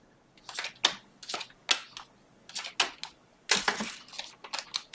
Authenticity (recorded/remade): recorded